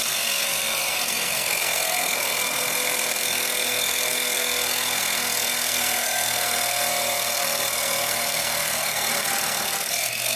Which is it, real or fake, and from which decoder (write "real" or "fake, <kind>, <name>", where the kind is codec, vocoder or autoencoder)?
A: fake, codec, SNAC